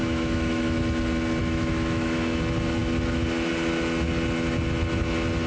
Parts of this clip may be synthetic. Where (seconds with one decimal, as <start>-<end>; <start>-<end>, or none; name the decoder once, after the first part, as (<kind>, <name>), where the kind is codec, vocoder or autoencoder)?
0.0-0.8 (autoencoder, DAC-VAE); 1.4-2.4